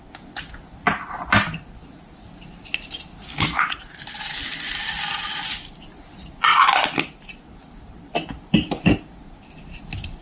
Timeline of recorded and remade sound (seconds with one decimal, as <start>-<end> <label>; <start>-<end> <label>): 0.0-10.2 recorded